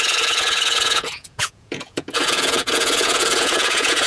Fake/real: fake